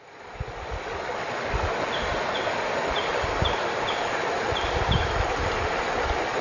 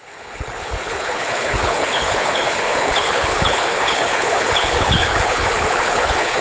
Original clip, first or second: first